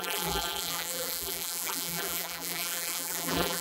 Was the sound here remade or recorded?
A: remade